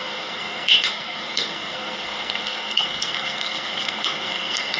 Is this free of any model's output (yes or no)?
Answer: no